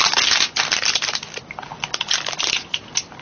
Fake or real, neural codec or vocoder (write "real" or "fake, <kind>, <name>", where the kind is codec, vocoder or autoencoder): real